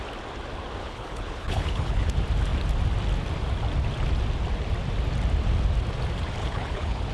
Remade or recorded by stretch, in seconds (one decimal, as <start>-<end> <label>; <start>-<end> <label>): 0.0-0.8 recorded; 0.8-2.1 remade; 2.1-6.4 recorded; 6.4-7.1 remade